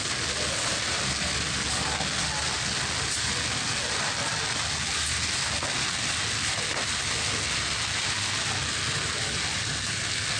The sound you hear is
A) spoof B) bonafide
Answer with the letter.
B